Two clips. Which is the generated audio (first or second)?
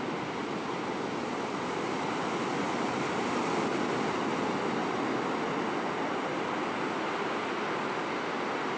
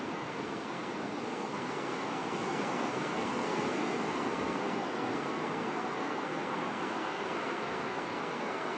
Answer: second